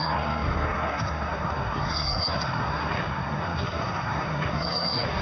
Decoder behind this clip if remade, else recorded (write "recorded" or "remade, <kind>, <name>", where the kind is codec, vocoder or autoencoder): remade, codec, SNAC